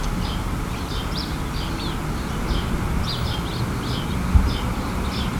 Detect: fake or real real